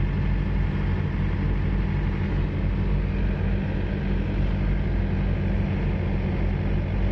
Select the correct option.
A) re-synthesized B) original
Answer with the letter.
B